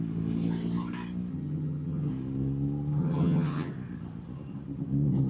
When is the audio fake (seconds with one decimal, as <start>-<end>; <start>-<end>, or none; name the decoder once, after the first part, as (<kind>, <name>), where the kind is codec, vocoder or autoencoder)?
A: 1.3-2.1 (vocoder, HiFi-GAN); 3.0-3.7